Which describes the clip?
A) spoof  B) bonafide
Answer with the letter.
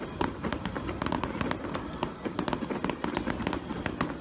B